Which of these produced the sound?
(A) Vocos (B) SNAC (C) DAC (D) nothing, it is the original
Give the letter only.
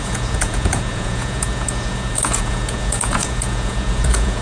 A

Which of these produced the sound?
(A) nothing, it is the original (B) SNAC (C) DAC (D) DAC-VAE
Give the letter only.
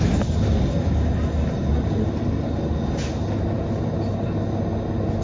A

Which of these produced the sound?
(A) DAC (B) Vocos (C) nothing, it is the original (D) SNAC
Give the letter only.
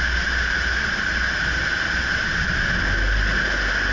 C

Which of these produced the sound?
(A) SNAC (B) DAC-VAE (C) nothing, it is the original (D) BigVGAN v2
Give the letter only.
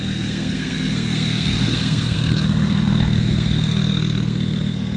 A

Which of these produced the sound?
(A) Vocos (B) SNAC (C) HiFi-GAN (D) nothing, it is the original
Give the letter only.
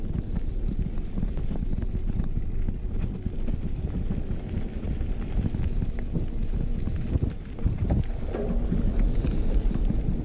D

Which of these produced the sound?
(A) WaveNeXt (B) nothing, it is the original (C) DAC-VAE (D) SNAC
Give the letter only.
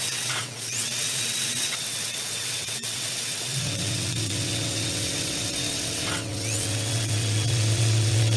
A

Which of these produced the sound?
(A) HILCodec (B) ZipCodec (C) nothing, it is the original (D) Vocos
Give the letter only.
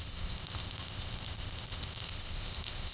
B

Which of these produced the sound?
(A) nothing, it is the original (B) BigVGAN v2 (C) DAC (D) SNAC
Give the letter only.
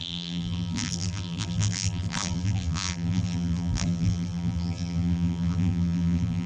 B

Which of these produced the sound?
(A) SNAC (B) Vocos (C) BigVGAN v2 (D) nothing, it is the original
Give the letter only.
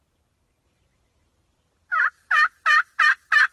C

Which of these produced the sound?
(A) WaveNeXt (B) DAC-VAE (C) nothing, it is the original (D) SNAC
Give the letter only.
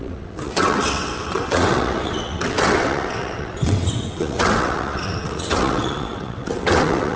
A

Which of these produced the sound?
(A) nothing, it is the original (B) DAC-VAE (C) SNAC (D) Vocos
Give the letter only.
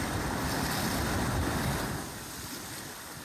A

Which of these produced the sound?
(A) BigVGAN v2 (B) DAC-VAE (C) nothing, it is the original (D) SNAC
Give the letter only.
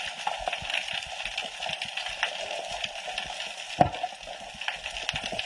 C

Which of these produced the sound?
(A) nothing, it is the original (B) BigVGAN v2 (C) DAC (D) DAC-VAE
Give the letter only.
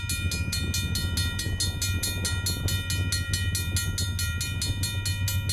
A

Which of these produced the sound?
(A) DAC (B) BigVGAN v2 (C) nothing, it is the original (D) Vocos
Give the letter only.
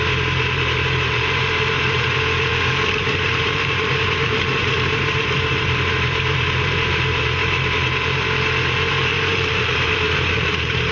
B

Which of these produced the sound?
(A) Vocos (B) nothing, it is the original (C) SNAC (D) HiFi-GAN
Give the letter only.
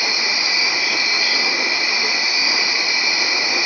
B